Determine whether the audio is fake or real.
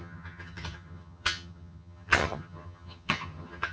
fake